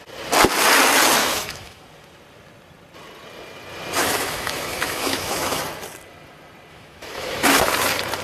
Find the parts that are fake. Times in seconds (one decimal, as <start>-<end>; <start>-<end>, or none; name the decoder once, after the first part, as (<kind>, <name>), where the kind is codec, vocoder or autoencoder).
1.2-1.8 (autoencoder, DAC-VAE); 4.0-5.6; 6.7-7.7